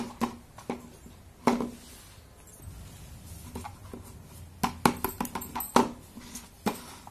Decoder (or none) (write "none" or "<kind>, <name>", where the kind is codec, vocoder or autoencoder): none